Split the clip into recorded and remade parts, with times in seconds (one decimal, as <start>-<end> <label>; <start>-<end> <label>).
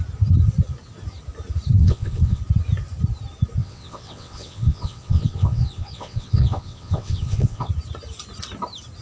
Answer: 0.0-1.8 recorded; 1.8-2.4 remade; 2.4-3.6 recorded; 3.6-7.7 remade; 7.7-9.0 recorded